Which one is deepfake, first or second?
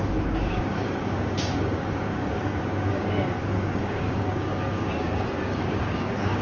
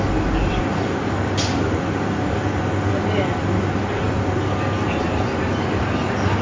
first